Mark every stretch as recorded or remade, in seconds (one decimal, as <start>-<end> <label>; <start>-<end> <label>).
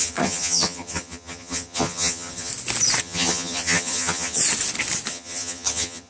0.0-2.5 remade; 2.5-3.0 recorded; 3.0-4.4 remade; 4.4-5.1 recorded; 5.1-6.1 remade